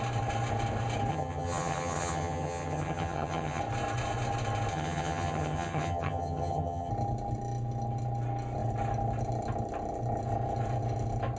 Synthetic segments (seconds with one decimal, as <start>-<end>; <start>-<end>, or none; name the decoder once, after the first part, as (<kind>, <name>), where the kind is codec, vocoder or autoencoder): 1.1-3.6 (vocoder, HiFi-GAN); 4.7-6.9